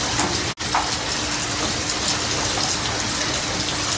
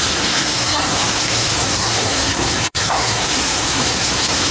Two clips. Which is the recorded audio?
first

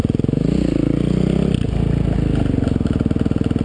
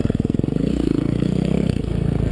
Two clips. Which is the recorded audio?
first